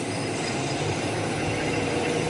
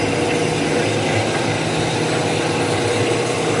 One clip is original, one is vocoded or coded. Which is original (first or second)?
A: second